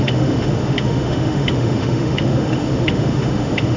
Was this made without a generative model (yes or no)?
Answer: no